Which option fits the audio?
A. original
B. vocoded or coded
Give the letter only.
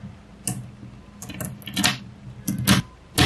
A